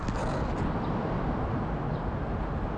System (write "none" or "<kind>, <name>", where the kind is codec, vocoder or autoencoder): none